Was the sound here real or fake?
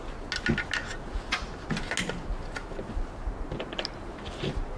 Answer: real